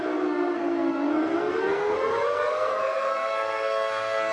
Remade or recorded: remade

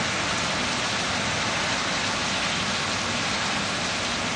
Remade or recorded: recorded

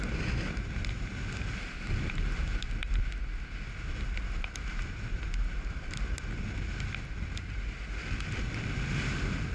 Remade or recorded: recorded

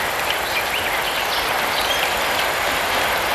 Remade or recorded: recorded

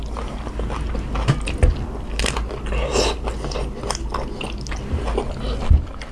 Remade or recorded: recorded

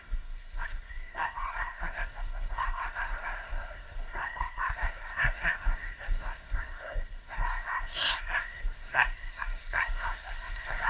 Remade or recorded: remade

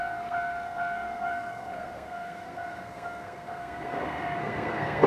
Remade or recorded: remade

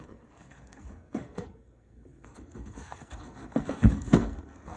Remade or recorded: remade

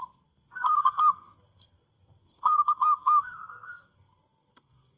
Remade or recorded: remade